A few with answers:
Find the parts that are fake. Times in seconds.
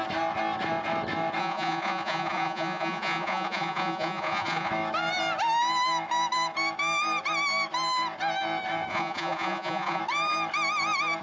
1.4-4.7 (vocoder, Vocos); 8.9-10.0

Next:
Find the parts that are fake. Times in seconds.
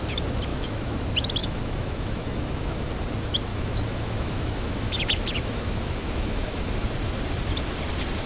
0.5-1.0 (autoencoder, DAC-VAE); 1.4-2.9; 3.5-6.7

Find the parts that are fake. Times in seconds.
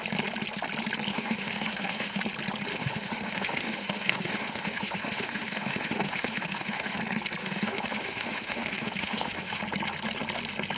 1.1-2.2 (autoencoder, DAC-VAE); 2.7-7.0; 7.4-9.6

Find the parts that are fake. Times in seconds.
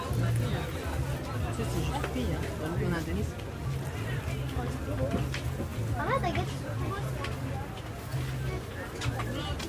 none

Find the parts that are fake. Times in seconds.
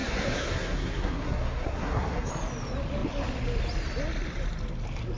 0.0-2.3 (codec, SNAC)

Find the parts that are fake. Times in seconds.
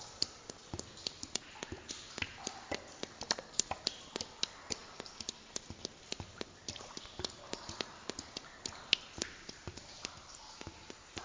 none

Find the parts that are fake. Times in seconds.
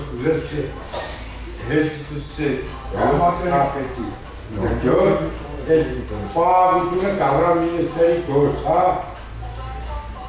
1.8-2.3 (codec, SNAC)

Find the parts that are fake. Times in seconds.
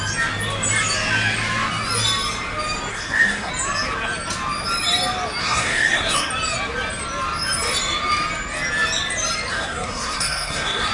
2.9-3.5 (codec, SNAC); 5.4-6.3; 9.5-10.9